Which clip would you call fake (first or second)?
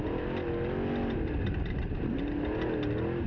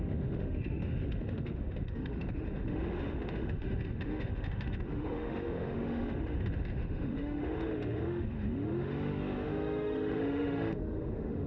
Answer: second